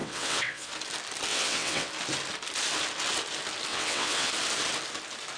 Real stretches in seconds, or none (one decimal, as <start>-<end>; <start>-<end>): 0.7-1.3; 1.9-3.7; 4.3-5.4

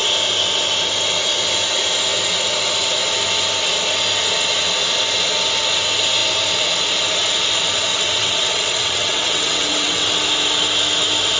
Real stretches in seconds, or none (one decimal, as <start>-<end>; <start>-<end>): 0.0-7.9; 10.1-11.4

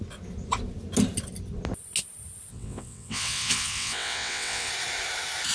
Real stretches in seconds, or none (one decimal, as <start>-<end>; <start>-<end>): 0.0-2.5; 4.7-5.5

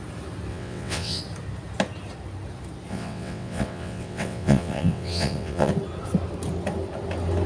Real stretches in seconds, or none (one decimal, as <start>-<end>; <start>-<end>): 0.0-0.5; 1.2-2.9; 5.7-7.5

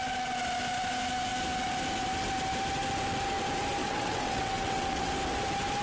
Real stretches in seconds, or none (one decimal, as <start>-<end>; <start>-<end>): 0.0-3.8; 5.1-5.8

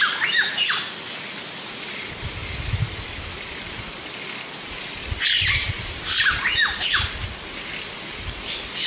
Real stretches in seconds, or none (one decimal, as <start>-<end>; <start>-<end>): 0.0-8.9